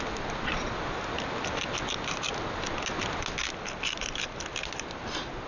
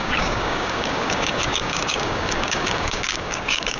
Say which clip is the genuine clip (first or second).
first